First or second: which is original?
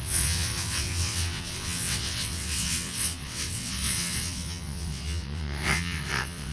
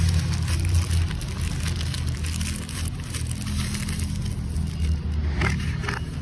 second